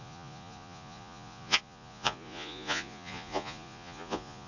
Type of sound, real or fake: fake